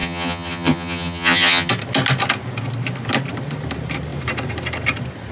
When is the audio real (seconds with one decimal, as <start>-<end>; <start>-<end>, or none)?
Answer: 1.7-5.3